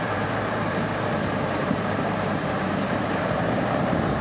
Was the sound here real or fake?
fake